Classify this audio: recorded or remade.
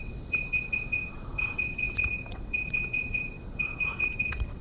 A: remade